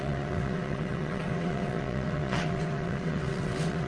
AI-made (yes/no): yes